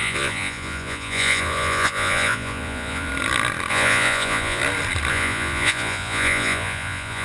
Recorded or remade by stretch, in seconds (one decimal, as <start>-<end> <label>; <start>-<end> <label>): 0.0-3.1 remade; 3.1-3.7 recorded; 3.7-4.6 remade; 4.6-5.1 recorded; 5.1-7.2 remade